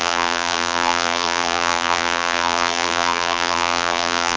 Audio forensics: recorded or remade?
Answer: remade